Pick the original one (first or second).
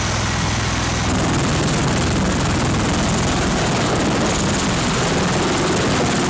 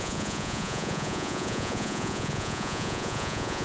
first